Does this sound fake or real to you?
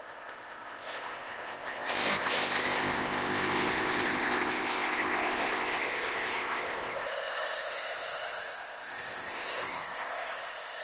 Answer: fake